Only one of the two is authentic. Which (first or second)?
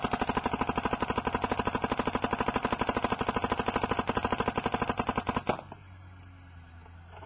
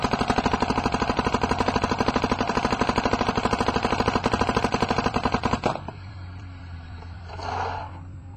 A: first